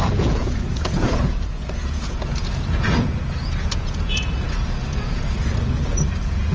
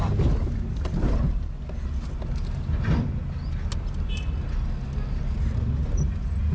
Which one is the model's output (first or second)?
first